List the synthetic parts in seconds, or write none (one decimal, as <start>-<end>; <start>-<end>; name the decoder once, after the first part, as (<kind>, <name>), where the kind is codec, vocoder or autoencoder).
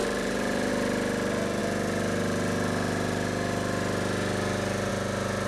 0.0-0.7 (vocoder, BigVGAN v2)